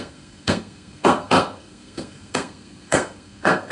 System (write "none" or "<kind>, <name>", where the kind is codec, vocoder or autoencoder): codec, SNAC